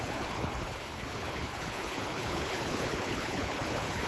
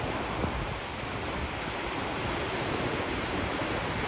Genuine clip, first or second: second